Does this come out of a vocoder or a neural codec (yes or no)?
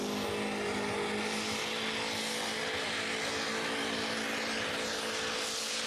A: no